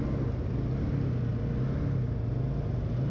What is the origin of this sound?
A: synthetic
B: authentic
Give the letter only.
B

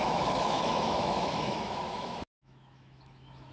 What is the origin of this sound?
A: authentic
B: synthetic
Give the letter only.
B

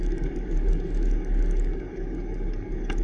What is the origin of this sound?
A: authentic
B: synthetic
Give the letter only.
B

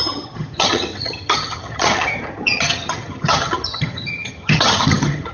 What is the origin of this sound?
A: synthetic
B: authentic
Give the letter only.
A